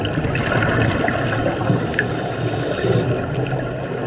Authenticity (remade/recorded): recorded